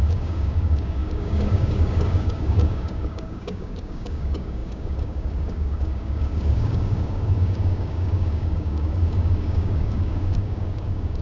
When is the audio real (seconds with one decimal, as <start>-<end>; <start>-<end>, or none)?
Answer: none